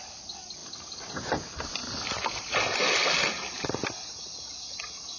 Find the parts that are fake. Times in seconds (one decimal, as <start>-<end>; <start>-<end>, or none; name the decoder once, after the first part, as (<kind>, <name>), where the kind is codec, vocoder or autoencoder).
none

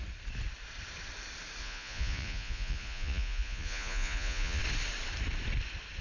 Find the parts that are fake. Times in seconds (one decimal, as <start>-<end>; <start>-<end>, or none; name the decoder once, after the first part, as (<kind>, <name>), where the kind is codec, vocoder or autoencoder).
1.6-4.6 (vocoder, Vocos)

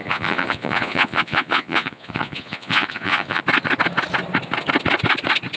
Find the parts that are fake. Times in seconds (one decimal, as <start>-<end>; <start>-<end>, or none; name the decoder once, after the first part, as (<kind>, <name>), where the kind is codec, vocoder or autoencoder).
0.0-3.4 (vocoder, Vocos)

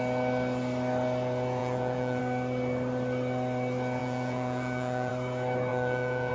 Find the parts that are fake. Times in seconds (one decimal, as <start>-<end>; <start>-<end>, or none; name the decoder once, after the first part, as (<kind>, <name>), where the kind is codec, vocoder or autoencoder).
1.6-2.2 (vocoder, Vocos); 4.0-5.1; 5.7-6.3